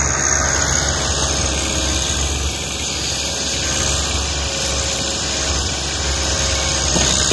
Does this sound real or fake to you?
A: real